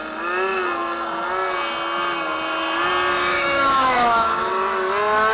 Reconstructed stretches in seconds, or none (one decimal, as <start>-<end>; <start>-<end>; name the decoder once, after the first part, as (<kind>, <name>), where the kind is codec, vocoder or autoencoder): 3.3-4.5 (autoencoder, DAC-VAE)

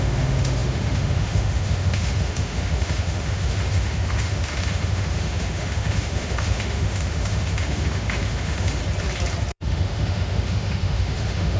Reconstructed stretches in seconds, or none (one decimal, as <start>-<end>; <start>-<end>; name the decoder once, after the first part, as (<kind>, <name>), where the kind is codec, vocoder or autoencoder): 0.0-8.8 (autoencoder, DAC-VAE); 9.5-11.6